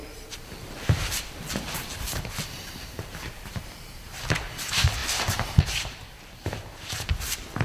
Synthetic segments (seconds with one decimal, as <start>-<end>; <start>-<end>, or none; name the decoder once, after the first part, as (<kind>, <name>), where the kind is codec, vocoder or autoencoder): 0.0-7.6 (vocoder, BigVGAN v2)